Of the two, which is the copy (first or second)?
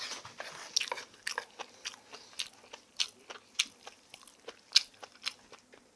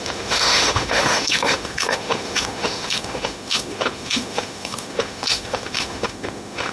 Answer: second